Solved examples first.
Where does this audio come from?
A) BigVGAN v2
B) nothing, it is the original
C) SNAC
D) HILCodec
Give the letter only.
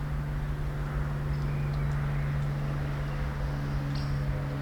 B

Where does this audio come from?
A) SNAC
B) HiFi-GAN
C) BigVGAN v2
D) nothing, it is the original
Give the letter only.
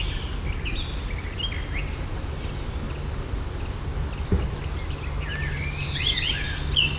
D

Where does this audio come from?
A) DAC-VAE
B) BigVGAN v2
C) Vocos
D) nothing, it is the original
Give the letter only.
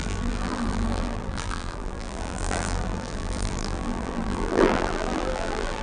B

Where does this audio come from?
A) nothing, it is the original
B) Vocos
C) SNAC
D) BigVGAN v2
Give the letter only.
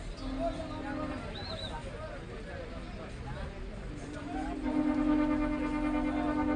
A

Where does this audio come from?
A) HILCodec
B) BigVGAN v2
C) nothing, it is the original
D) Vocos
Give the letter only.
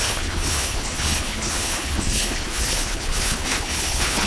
A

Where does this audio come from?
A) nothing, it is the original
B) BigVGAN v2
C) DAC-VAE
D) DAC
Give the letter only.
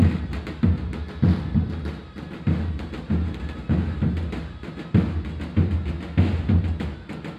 A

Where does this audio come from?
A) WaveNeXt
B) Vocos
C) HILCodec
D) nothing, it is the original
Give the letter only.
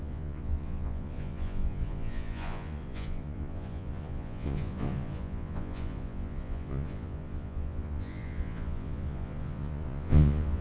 B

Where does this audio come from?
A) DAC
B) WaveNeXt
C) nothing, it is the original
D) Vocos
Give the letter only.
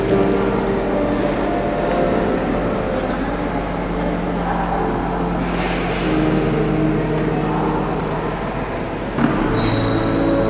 C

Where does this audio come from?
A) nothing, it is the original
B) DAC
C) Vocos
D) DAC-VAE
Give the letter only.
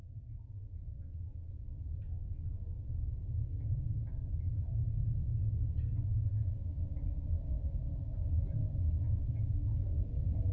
A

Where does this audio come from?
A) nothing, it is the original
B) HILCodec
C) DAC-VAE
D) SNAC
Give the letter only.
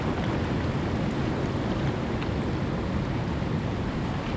A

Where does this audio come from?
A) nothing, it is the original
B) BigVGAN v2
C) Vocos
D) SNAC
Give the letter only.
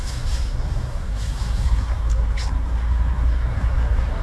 D